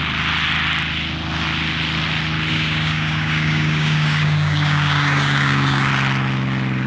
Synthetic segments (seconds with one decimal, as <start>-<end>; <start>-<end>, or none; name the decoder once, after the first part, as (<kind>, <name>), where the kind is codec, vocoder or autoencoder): 2.5-5.9 (codec, DAC)